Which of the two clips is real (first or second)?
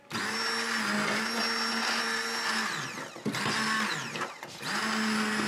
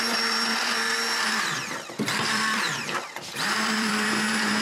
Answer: first